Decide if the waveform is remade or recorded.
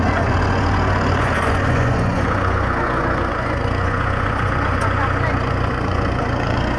remade